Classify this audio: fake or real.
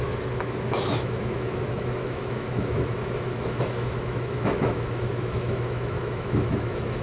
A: fake